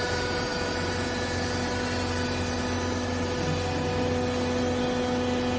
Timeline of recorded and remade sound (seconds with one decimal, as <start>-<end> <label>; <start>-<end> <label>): 0.0-5.6 recorded